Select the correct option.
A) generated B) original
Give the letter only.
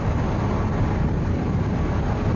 B